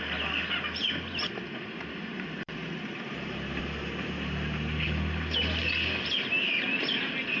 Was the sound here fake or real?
real